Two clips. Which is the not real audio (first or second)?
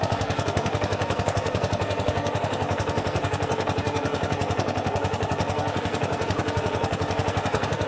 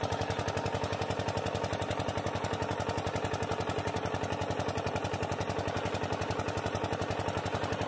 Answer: first